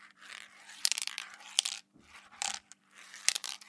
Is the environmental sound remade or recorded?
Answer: remade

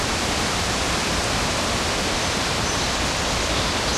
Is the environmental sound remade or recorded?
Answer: remade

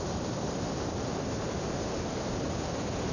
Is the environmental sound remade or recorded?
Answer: remade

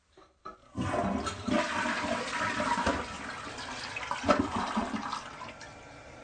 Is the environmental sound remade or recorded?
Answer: recorded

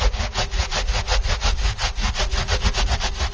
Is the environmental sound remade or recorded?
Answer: remade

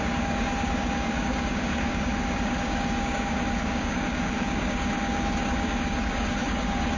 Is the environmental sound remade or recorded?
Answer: remade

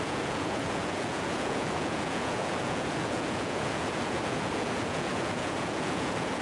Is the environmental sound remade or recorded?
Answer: remade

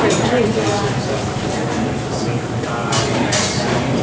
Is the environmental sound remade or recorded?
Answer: recorded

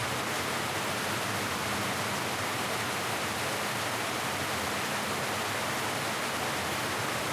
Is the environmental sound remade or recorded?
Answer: recorded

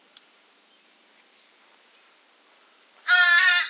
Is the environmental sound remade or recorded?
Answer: remade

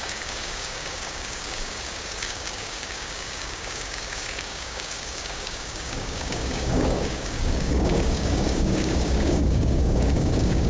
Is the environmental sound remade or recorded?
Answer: remade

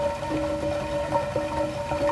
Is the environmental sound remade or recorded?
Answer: recorded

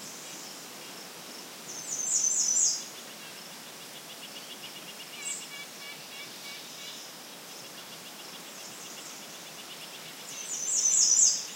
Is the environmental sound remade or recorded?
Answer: recorded